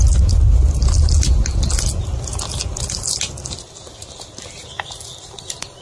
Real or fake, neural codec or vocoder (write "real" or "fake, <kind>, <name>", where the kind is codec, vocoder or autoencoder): real